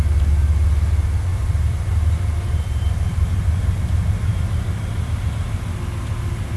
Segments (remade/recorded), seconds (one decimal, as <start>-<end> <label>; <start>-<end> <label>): 0.0-1.3 recorded; 1.3-5.3 remade; 5.3-6.6 recorded